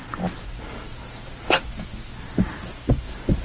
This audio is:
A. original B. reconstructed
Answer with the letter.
A